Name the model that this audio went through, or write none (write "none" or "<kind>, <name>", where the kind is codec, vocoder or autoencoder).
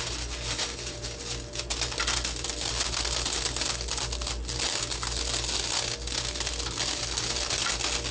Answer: none